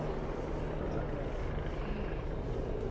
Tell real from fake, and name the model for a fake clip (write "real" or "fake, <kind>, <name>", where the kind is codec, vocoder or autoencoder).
real